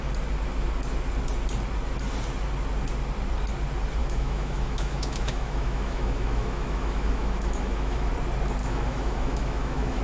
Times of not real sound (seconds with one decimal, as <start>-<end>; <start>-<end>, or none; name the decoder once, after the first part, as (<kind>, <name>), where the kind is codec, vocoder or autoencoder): 4.0-8.1 (autoencoder, DAC-VAE); 8.6-10.0